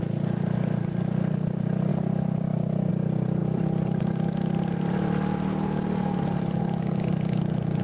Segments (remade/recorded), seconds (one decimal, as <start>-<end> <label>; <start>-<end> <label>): 0.0-1.9 recorded; 1.9-2.9 remade; 2.9-3.4 recorded; 3.4-6.6 remade; 6.6-7.8 recorded